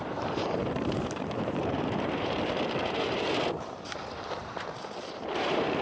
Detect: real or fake fake